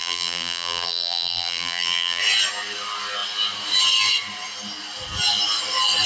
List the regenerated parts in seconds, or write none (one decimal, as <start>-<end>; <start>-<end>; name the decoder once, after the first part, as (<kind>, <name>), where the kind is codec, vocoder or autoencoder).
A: 0.0-2.2 (vocoder, BigVGAN v2)